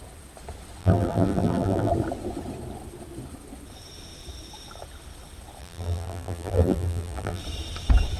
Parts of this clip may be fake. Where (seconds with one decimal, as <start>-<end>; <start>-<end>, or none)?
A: 0.8-1.9; 5.6-7.4